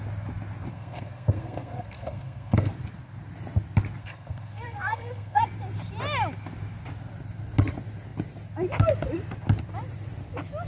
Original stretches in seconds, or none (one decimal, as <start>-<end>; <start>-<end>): 0.0-0.7; 2.7-4.0; 5.4-10.7